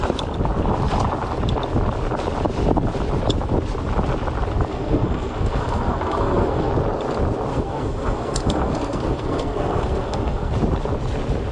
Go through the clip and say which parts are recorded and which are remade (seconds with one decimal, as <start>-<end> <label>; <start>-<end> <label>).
0.0-4.7 recorded; 4.7-6.7 remade; 6.7-7.5 recorded; 7.5-10.5 remade; 10.5-11.5 recorded